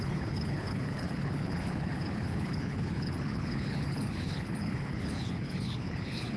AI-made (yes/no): yes